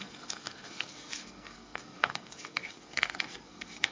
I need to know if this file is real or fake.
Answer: fake